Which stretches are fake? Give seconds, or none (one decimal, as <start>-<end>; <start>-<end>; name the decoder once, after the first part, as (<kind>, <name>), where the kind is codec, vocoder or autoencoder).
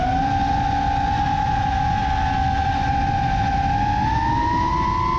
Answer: none